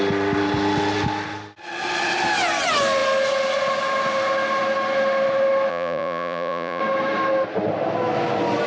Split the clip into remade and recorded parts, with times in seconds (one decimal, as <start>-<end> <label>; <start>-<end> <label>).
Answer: 0.0-5.7 recorded; 5.7-6.8 remade; 6.8-8.7 recorded